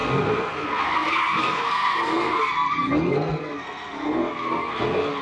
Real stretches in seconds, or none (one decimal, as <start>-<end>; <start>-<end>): none